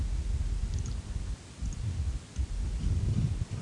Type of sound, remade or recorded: recorded